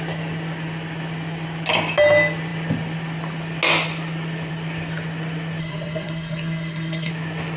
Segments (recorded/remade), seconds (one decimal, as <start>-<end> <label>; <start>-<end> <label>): 0.0-5.6 recorded; 5.6-7.1 remade; 7.1-7.6 recorded